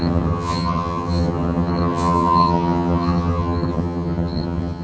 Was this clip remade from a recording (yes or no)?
yes